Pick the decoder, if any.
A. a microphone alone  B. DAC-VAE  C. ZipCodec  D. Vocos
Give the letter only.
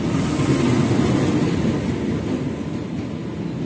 A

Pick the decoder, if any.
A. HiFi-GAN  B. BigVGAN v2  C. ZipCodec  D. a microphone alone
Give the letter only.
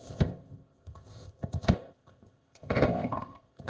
C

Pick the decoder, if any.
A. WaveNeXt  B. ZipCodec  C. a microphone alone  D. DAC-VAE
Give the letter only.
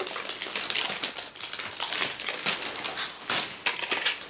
C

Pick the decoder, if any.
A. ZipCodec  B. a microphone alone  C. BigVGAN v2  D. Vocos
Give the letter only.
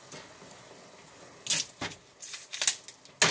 B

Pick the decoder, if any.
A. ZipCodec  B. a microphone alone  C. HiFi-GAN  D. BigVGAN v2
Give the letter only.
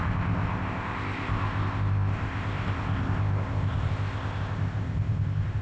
A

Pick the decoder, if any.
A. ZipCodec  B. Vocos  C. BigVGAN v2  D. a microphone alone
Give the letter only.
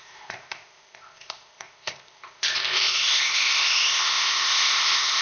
A